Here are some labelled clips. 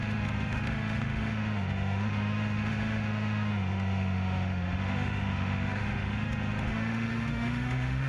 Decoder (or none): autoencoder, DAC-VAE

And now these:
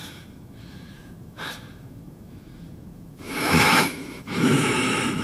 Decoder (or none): autoencoder, DAC-VAE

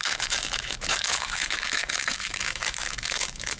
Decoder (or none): autoencoder, DAC-VAE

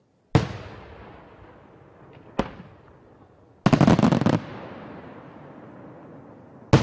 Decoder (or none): none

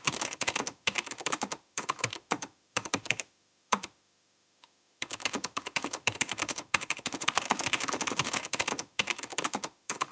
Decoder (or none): autoencoder, DAC-VAE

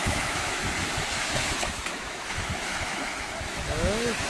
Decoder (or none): autoencoder, DAC-VAE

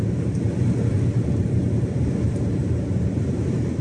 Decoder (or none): none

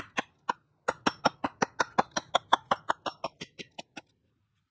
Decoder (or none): none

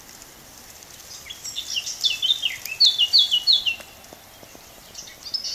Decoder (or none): none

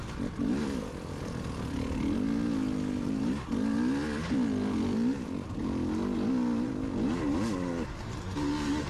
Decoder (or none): none